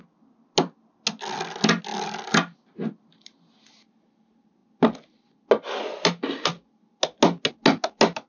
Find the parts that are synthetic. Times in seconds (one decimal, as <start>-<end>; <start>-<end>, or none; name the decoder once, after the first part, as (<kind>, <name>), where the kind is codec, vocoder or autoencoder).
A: none